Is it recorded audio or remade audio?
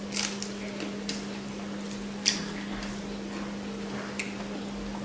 recorded